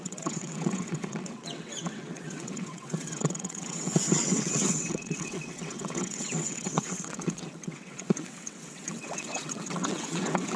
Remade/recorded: remade